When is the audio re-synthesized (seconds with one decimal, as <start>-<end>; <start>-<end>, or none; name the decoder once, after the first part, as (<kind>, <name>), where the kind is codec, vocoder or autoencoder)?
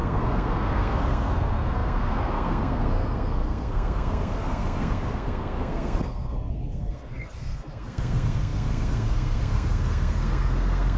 0.0-11.0 (codec, SNAC)